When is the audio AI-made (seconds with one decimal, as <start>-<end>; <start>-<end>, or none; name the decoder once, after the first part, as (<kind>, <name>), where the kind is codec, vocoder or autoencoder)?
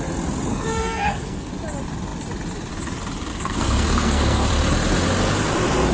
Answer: 0.5-1.5 (codec, SNAC); 3.3-4.5